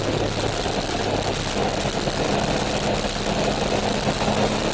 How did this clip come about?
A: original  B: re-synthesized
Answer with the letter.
A